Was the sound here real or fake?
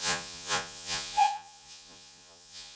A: fake